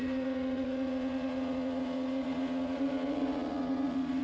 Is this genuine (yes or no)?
no